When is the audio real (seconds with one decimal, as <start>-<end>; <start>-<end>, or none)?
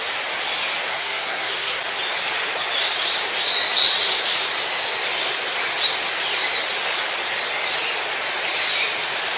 0.0-0.9; 1.8-9.4